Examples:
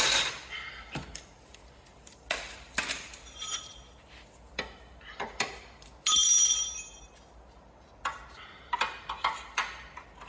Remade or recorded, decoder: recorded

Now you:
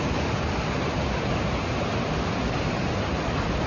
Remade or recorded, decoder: recorded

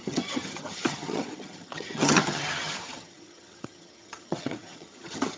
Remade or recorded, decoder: remade, vocoder, HiFi-GAN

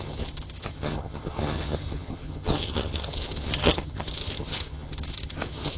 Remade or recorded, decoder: remade, vocoder, HiFi-GAN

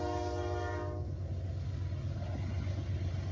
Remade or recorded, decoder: recorded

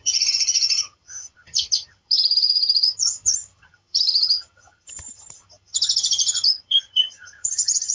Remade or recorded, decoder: remade, vocoder, HiFi-GAN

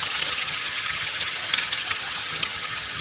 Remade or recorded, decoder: remade, vocoder, HiFi-GAN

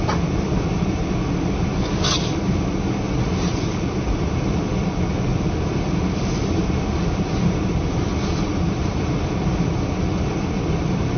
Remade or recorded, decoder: recorded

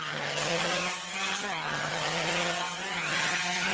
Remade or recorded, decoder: remade, vocoder, HiFi-GAN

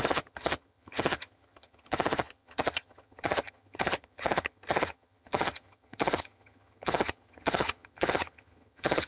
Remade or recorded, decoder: remade, vocoder, HiFi-GAN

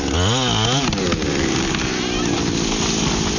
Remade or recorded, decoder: recorded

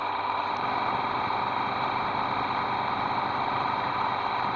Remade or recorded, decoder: recorded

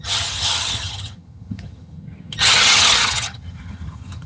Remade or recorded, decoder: remade, vocoder, HiFi-GAN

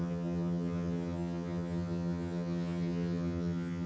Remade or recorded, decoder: remade, vocoder, HiFi-GAN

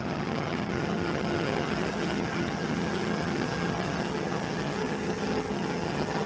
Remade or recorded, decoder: remade, vocoder, HiFi-GAN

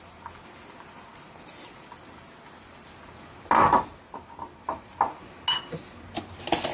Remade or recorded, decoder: recorded